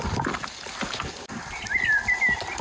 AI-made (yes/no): no